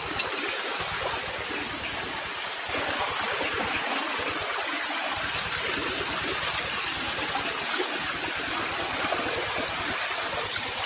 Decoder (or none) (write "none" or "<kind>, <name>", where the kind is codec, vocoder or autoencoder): none